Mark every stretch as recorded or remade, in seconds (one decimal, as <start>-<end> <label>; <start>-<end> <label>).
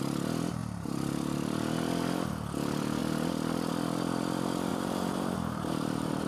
0.0-4.7 recorded; 4.7-6.3 remade